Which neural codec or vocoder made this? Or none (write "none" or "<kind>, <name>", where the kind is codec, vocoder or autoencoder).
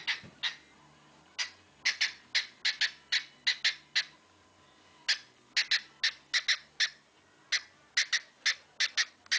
none